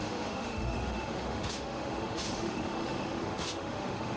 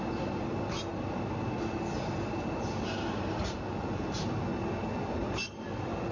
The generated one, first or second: first